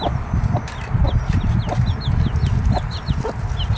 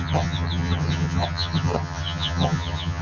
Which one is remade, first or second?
second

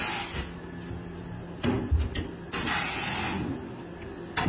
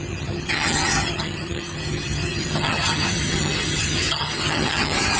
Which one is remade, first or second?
second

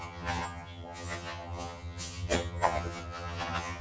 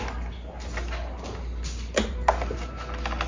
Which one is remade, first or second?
first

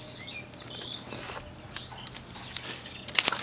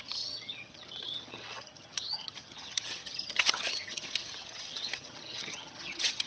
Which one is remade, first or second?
second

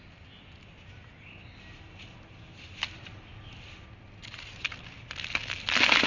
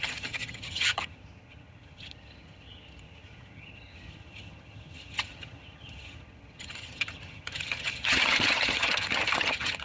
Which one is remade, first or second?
second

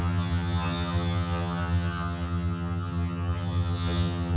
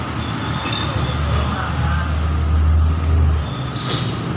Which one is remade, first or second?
first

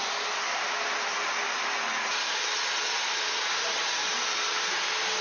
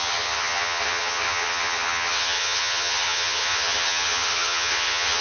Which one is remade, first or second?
second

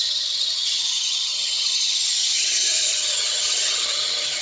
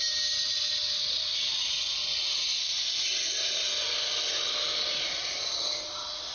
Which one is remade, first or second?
first